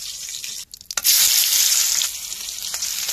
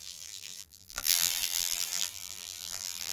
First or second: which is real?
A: first